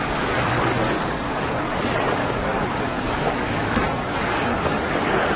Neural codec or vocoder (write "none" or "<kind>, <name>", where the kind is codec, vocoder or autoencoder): codec, DAC